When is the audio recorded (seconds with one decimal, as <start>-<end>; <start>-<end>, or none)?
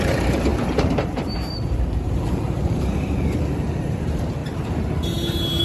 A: 4.4-5.6